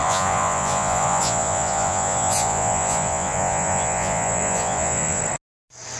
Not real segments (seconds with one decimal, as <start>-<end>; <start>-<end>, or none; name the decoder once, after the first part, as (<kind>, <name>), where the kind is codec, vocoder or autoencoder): 0.0-5.2 (vocoder, Vocos)